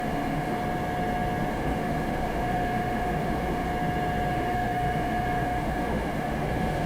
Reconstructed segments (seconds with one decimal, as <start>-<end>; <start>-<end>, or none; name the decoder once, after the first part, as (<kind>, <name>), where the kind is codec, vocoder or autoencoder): 0.0-0.6 (autoencoder, DAC-VAE); 1.5-3.7; 4.3-6.9